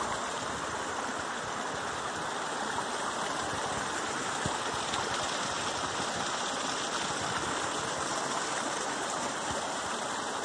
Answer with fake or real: real